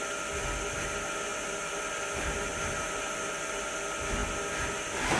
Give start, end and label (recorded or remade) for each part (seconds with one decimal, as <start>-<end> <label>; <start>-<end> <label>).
0.0-1.3 recorded; 1.3-1.9 remade; 1.9-2.5 recorded; 2.5-3.8 remade; 3.8-5.2 recorded